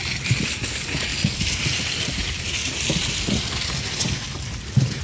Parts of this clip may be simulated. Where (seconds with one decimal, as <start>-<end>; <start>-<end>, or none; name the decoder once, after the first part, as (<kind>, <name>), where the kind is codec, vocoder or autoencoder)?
1.1-2.2 (vocoder, BigVGAN v2); 2.6-4.1